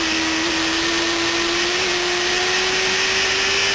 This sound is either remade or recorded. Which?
recorded